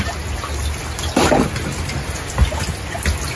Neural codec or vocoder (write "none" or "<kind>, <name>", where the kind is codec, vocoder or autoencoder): none